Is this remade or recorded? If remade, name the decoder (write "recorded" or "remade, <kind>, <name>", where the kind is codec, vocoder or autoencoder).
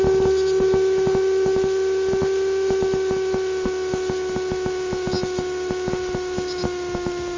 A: recorded